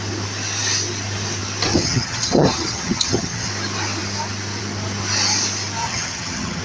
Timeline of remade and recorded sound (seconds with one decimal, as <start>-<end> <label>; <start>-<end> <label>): 0.0-1.8 recorded; 1.8-3.5 remade; 3.5-5.8 recorded; 5.8-6.6 remade